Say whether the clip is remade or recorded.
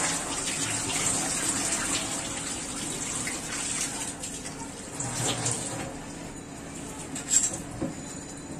recorded